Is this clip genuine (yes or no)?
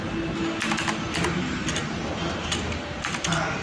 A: yes